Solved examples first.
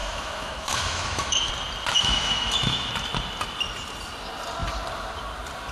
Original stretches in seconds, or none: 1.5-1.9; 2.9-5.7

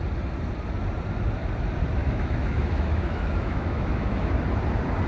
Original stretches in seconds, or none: 0.0-2.0; 4.3-5.1